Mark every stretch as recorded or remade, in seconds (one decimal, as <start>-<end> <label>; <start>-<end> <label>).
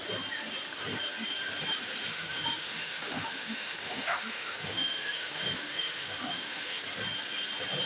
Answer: 0.0-2.1 recorded; 2.1-6.8 remade; 6.8-7.9 recorded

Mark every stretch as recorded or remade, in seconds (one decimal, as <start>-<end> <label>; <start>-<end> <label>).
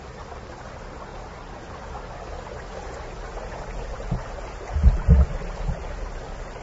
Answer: 0.0-6.6 recorded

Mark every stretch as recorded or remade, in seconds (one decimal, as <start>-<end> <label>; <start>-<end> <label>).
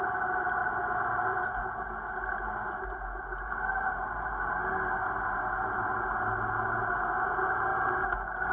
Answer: 0.0-8.5 recorded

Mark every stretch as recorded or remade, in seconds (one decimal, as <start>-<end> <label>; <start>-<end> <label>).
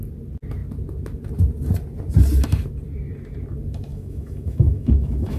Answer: 0.0-3.9 recorded; 3.9-5.4 remade